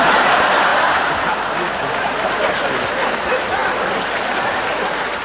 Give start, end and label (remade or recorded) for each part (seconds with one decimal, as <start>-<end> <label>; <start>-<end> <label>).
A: 0.0-5.2 recorded